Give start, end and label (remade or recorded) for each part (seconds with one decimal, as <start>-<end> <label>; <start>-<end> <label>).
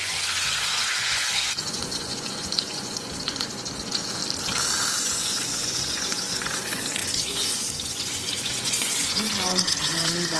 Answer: 0.0-4.2 remade; 4.2-5.0 recorded; 5.0-10.4 remade